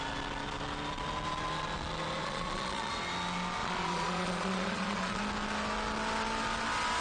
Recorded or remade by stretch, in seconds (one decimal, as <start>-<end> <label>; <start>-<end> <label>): 0.0-2.2 recorded; 2.2-2.9 remade; 2.9-3.6 recorded; 3.6-5.2 remade; 5.2-7.0 recorded